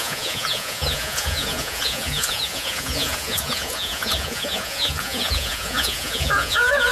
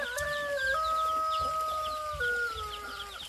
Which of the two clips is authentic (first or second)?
second